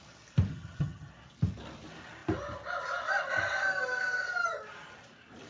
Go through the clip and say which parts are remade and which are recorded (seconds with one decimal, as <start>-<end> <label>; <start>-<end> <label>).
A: 0.0-0.5 recorded; 0.5-1.1 remade; 1.1-5.5 recorded